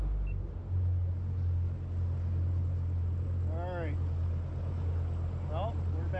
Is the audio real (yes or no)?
yes